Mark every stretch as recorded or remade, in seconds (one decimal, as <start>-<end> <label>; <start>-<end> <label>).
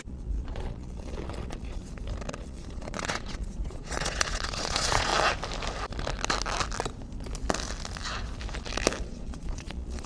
0.0-1.8 remade; 1.8-2.3 recorded; 2.3-5.1 remade; 5.1-9.0 recorded; 9.0-10.1 remade